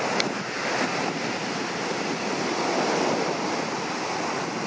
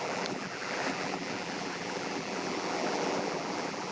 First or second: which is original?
first